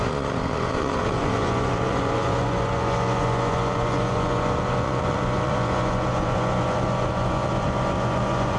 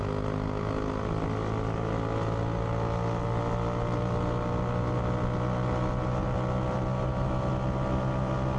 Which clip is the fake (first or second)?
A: first